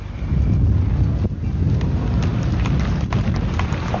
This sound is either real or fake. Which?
real